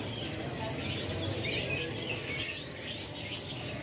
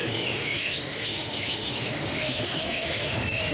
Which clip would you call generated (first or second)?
second